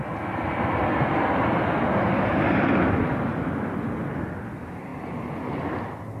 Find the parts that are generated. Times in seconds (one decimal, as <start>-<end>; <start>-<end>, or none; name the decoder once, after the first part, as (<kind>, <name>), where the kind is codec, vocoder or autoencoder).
4.9-5.8 (vocoder, BigVGAN v2)